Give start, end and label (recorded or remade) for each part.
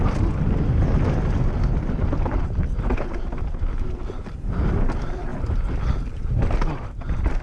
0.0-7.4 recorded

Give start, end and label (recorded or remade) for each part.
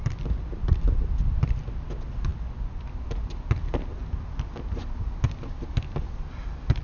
0.0-6.8 recorded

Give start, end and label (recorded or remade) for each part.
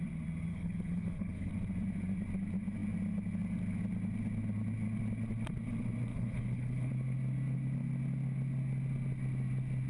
0.0-0.5 recorded; 0.5-1.5 remade; 1.5-6.1 recorded; 6.1-6.9 remade; 6.9-9.9 recorded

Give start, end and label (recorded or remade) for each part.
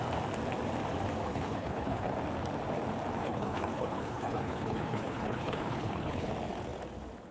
0.0-1.3 recorded; 1.3-2.1 remade; 2.1-3.2 recorded; 3.2-6.3 remade; 6.3-7.3 recorded